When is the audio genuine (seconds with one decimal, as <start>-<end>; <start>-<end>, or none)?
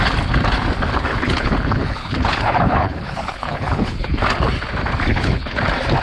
0.0-1.1; 4.2-5.1; 5.6-6.0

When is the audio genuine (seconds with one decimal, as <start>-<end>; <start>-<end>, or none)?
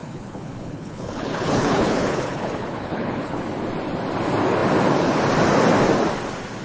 3.4-6.6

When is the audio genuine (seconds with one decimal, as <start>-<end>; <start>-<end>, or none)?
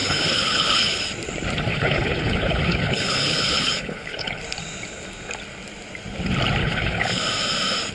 1.0-1.7; 4.4-6.6; 7.2-7.9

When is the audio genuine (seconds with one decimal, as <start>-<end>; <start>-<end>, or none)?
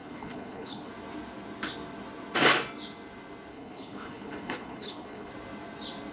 0.9-3.5; 5.3-6.1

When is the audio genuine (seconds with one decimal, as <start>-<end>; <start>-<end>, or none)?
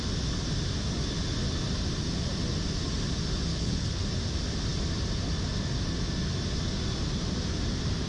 0.0-3.5; 4.0-8.1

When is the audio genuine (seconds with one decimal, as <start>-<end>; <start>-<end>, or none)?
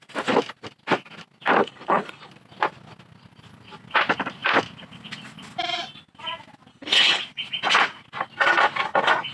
0.0-1.6; 2.3-6.7; 7.2-9.3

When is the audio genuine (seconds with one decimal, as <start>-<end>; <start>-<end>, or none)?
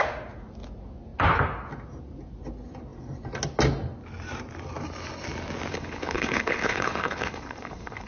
0.0-5.7